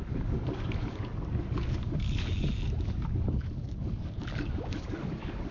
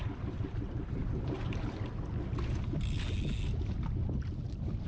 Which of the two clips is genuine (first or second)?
second